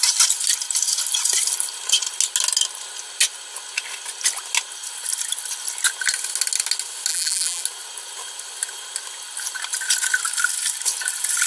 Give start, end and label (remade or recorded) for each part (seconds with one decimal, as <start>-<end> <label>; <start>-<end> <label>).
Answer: 0.0-7.1 recorded; 7.1-7.6 remade; 7.6-11.5 recorded